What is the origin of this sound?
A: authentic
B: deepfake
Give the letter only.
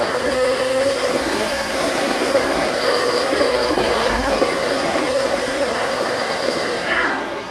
B